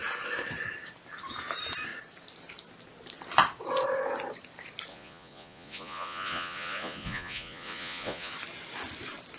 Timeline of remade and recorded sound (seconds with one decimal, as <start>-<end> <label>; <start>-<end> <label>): 0.0-4.9 recorded; 4.9-8.3 remade; 8.3-9.4 recorded